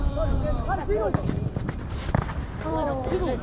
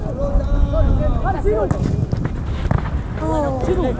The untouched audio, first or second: second